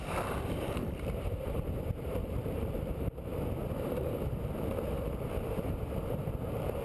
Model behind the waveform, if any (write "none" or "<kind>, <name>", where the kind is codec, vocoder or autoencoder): vocoder, BigVGAN v2